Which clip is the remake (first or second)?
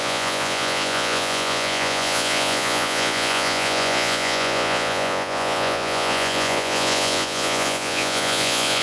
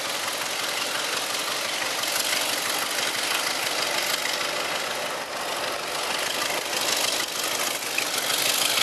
first